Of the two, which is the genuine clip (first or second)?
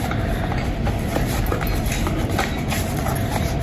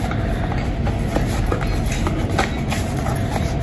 second